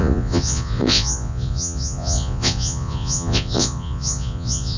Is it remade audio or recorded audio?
remade